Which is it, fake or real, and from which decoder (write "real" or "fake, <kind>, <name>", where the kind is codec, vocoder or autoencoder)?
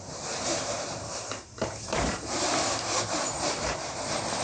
fake, vocoder, BigVGAN v2